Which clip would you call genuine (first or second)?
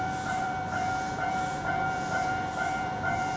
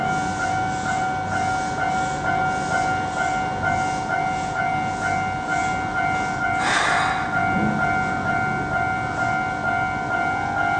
second